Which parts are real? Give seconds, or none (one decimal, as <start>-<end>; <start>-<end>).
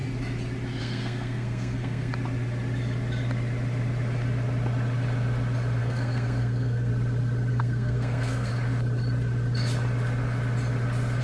0.0-0.8; 2.1-5.8; 6.9-7.5; 8.5-11.2